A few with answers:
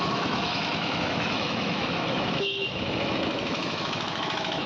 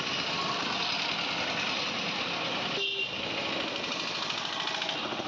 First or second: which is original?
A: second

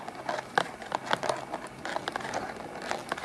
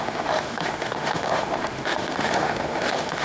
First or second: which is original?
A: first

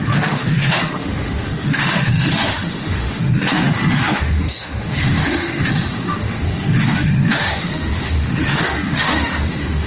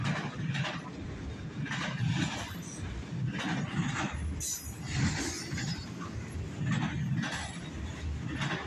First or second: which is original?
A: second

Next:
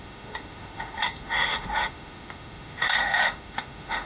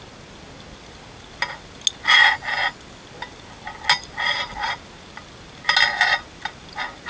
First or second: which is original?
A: second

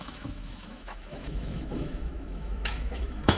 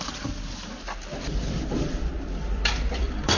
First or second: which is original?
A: second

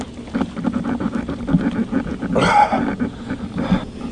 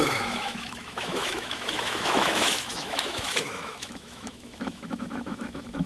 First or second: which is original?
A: first